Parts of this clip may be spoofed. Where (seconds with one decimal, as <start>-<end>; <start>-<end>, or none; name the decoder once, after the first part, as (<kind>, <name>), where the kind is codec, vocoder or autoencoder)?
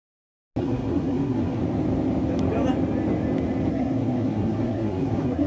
0.6-1.6 (codec, SNAC); 3.7-5.5